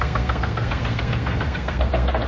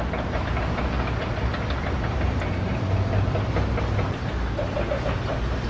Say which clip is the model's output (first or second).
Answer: first